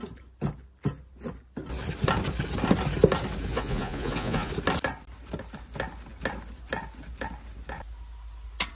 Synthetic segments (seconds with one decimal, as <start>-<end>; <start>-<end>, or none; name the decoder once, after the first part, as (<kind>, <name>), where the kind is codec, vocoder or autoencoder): 3.5-4.5 (vocoder, Vocos)